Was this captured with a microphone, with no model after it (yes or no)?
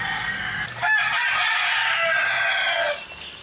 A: yes